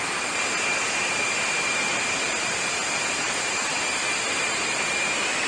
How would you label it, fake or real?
real